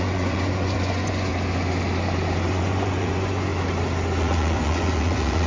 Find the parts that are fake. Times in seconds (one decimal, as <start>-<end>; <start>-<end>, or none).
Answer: 0.0-1.3; 2.5-3.5; 4.2-5.5